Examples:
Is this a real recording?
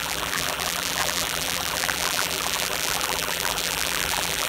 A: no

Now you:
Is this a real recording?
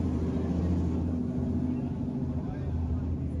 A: yes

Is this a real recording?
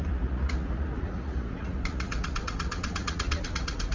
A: no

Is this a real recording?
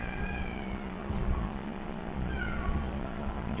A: no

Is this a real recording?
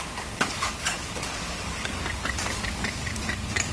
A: no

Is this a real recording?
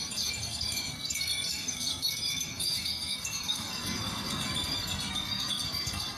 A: no